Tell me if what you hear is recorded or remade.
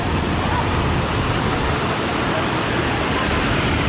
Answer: recorded